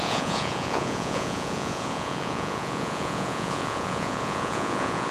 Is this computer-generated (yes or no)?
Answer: yes